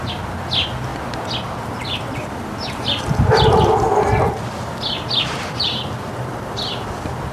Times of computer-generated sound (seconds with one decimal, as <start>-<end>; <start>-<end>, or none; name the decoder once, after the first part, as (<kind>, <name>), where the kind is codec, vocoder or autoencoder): none